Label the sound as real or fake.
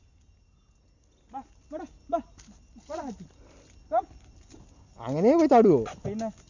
real